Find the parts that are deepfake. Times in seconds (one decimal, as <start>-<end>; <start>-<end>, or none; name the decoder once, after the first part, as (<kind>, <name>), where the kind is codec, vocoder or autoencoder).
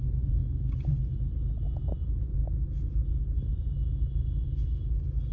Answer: 0.0-0.4 (vocoder, Vocos); 1.6-2.4